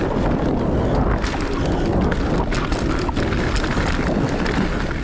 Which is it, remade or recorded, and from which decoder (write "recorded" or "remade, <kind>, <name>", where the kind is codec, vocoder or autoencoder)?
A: recorded